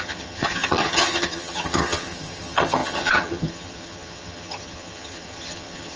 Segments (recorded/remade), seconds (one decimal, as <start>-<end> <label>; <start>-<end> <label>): 0.0-6.0 remade